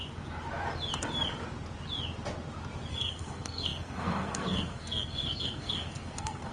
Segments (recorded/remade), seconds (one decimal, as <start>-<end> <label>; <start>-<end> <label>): 0.0-2.9 recorded; 2.9-6.5 remade